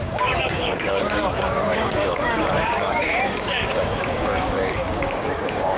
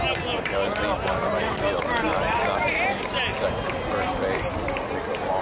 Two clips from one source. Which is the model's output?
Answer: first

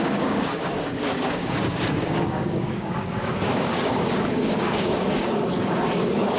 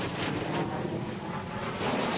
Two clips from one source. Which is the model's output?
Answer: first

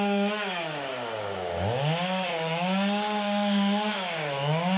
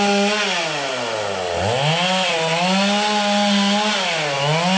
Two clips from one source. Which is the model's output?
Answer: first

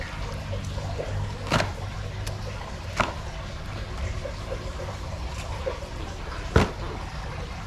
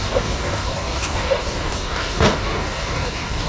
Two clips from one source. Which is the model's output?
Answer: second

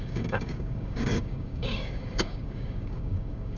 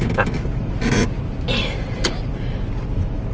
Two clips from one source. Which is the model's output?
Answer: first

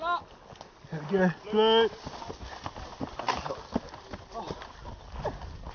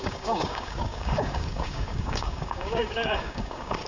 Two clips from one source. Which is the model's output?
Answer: second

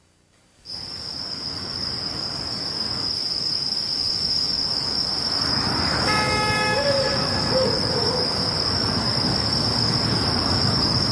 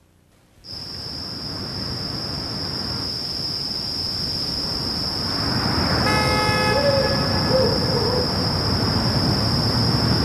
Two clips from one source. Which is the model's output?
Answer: first